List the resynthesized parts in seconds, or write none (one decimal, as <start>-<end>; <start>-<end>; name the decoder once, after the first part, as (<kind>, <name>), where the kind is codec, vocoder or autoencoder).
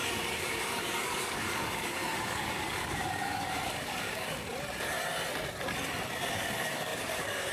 0.0-4.5 (codec, DAC); 6.3-7.5